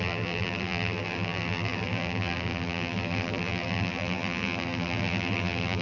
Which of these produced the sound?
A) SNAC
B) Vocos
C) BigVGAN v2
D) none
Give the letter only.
C